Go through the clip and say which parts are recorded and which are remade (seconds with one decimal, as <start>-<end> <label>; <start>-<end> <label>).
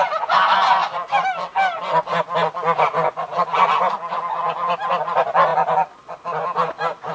0.0-7.1 recorded